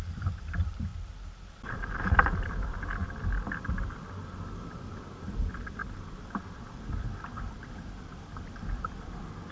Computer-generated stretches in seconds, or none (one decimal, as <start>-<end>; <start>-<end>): 0.0-0.9; 1.5-3.0; 4.6-9.5